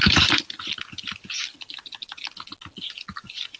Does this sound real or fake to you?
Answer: real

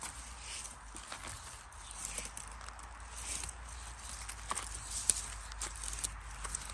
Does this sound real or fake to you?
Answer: real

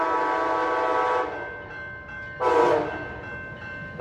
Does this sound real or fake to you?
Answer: real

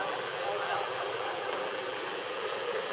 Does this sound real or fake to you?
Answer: fake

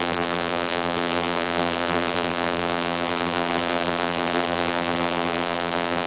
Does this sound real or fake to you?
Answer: fake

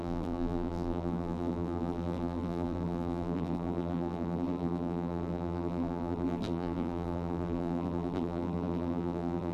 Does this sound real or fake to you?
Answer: fake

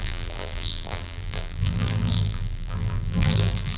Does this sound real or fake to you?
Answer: fake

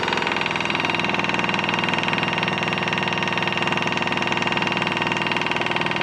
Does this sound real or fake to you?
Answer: real